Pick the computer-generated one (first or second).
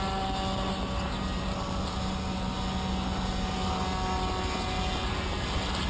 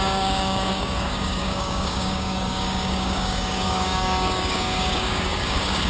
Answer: second